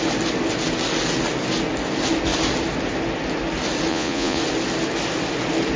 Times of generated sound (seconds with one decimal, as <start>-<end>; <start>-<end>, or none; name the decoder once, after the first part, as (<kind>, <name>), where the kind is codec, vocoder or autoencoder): 3.9-4.4 (vocoder, Vocos)